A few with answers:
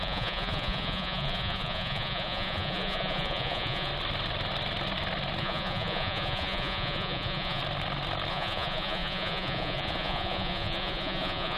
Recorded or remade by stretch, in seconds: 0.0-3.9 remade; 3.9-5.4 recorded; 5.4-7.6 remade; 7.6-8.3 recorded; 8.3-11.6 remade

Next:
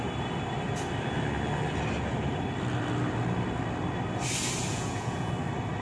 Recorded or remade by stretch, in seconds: 0.0-4.7 recorded; 4.7-5.3 remade; 5.3-5.8 recorded

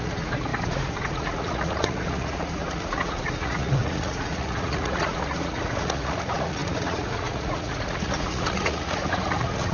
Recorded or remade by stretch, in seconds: 0.0-9.7 remade